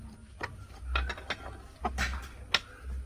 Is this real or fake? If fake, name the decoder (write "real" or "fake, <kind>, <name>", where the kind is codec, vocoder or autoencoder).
real